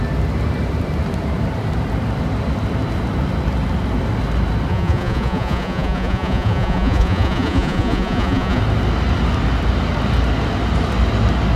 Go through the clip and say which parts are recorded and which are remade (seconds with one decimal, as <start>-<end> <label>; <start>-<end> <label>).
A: 0.0-4.7 recorded; 4.7-8.6 remade; 8.6-11.6 recorded